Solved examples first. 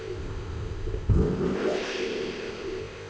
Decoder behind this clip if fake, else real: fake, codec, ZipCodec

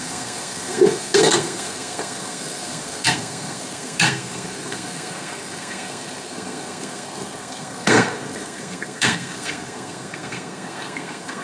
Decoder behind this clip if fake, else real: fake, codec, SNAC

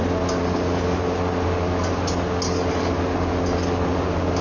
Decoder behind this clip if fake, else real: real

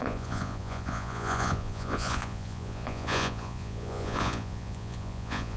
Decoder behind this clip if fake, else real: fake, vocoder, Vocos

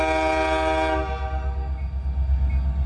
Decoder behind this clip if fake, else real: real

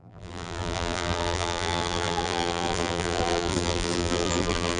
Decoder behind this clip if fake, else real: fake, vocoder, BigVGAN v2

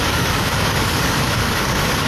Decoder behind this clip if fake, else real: fake, codec, DAC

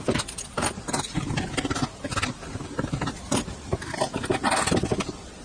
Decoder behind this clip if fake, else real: real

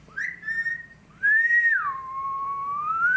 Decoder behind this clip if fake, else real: fake, vocoder, BigVGAN v2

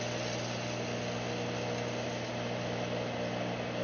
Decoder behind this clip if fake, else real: real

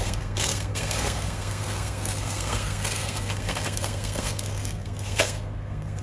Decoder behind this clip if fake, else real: fake, codec, SNAC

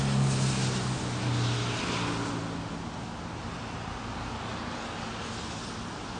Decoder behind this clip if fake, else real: real